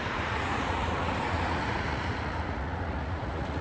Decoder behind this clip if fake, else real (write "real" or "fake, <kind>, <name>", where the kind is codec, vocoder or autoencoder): fake, vocoder, Vocos